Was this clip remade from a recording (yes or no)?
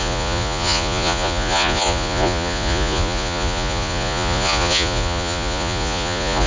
yes